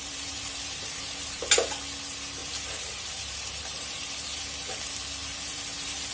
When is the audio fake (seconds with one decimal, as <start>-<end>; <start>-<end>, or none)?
0.0-1.4; 2.4-4.4; 5.2-6.1